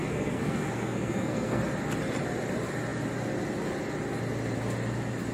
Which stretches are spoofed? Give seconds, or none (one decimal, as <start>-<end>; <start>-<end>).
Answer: 0.0-1.6